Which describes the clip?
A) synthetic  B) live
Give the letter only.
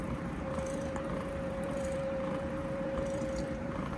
A